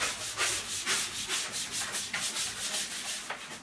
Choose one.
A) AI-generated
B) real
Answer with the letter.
B